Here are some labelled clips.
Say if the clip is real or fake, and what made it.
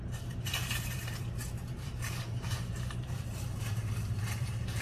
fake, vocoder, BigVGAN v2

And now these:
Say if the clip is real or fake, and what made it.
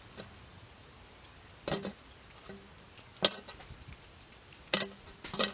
real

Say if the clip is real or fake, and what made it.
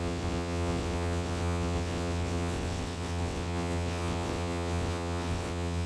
fake, vocoder, WaveNeXt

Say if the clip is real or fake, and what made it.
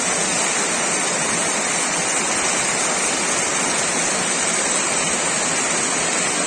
real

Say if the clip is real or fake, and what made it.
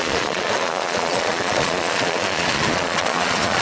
fake, vocoder, Vocos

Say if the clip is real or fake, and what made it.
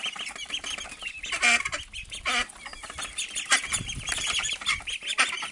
real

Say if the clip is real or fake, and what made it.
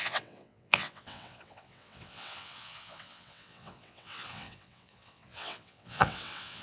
fake, vocoder, WaveNeXt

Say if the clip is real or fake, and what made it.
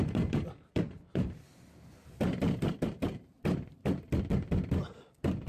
fake, vocoder, BigVGAN v2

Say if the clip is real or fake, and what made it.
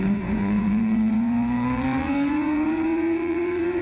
fake, vocoder, Vocos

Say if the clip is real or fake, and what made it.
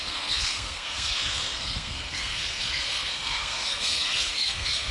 fake, codec, SNAC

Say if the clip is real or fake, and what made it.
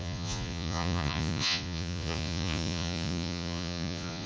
fake, vocoder, Vocos